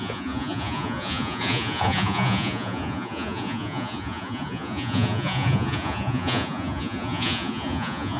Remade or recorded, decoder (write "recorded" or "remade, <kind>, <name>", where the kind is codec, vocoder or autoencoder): remade, vocoder, Vocos